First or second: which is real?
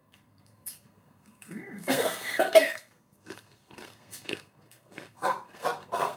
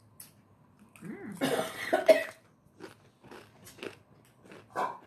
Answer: second